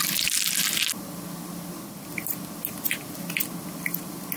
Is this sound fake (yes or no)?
no